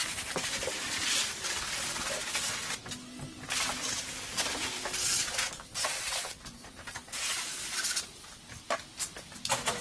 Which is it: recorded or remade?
recorded